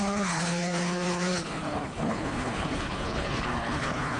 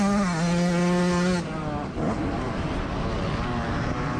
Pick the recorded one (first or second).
second